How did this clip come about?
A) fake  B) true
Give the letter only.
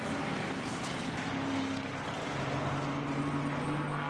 B